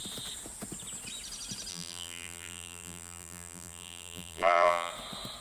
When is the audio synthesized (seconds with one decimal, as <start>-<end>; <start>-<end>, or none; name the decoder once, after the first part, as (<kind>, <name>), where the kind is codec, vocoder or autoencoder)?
1.7-4.9 (vocoder, BigVGAN v2)